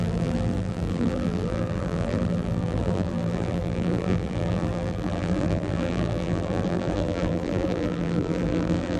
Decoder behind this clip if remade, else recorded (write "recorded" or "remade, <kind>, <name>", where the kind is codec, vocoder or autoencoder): remade, vocoder, BigVGAN v2